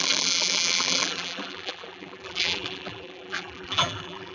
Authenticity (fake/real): fake